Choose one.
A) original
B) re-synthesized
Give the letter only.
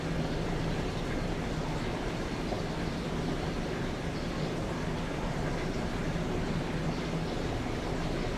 A